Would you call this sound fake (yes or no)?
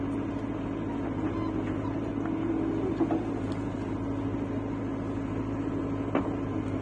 no